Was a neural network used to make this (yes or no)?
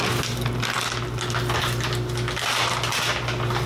no